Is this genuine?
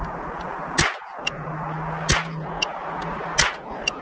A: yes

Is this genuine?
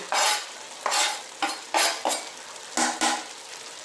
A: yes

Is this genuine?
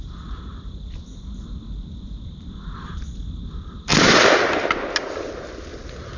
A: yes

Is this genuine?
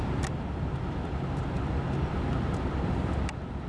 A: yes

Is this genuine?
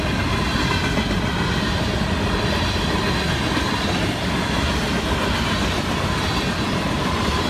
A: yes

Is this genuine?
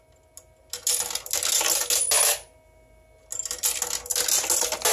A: yes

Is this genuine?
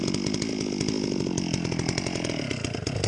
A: yes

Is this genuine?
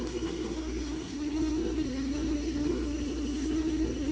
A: no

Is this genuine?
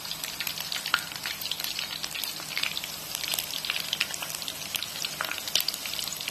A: yes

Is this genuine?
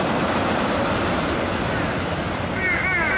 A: yes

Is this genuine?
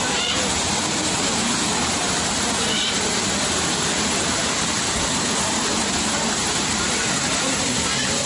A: no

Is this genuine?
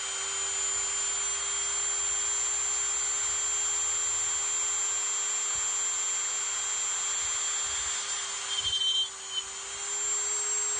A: yes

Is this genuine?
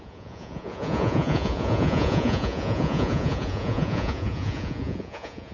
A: no